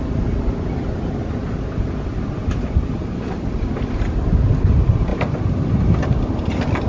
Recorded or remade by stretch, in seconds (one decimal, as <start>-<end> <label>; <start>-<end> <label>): 0.0-6.9 recorded